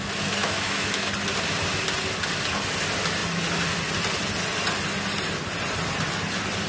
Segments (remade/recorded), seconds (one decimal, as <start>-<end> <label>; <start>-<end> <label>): 0.0-0.4 recorded; 0.4-1.1 remade; 1.1-6.7 recorded